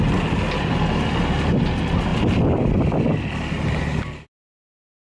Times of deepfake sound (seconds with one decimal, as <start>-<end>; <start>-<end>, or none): none